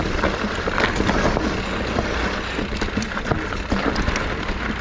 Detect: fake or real real